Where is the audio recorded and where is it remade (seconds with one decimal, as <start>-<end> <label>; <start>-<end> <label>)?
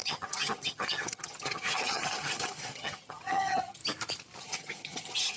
0.0-3.8 remade; 3.8-4.4 recorded; 4.4-5.4 remade